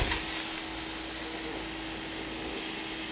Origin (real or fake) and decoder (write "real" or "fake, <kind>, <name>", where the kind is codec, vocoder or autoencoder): real